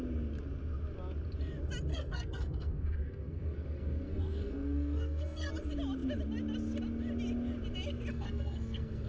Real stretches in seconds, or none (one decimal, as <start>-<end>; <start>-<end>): 0.0-1.9; 5.5-8.1

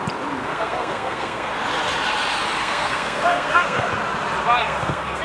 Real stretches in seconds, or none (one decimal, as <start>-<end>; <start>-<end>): 0.0-0.4; 1.5-2.6; 3.9-4.6